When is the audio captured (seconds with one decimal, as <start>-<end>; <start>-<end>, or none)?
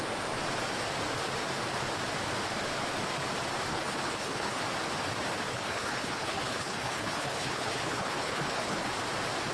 0.0-3.7; 4.6-5.5; 8.8-9.5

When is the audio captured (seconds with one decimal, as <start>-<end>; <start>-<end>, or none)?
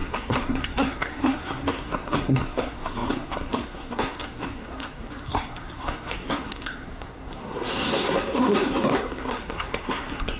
none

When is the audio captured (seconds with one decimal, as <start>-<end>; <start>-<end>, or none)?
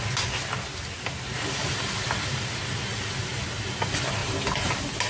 0.0-5.1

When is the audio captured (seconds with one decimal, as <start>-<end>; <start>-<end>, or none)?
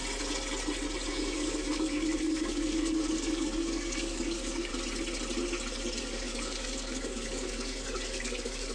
0.0-1.1; 4.7-6.0